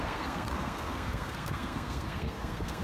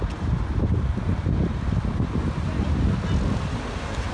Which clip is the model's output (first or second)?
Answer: first